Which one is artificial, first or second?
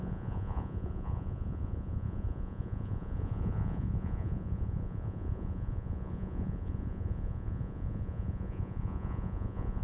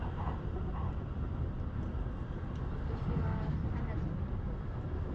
first